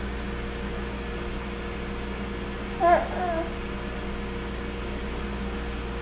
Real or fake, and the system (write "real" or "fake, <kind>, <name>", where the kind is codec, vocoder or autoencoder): real